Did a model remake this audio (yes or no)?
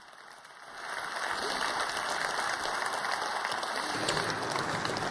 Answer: no